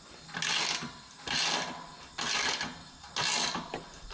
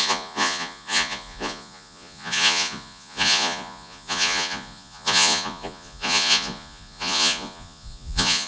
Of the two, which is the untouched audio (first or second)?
first